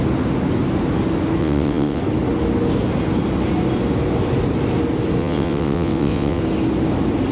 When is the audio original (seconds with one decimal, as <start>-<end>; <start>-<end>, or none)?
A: 0.0-1.4; 2.0-5.2; 6.4-7.3